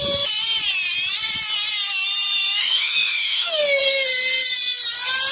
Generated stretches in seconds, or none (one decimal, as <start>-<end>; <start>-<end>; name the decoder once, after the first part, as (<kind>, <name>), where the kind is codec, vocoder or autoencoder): 2.6-3.8 (autoencoder, DAC-VAE)